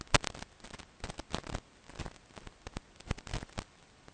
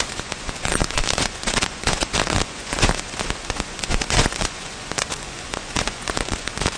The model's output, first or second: second